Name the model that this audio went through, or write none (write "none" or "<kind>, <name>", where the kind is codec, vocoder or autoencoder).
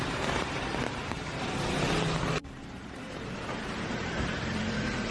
vocoder, BigVGAN v2